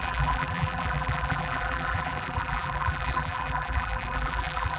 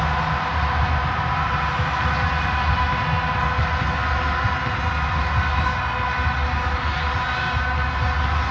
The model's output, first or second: first